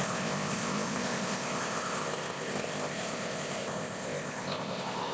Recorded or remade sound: remade